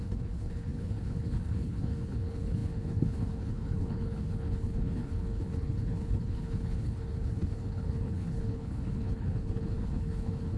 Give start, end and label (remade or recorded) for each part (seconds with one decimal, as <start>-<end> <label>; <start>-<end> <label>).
0.0-10.6 remade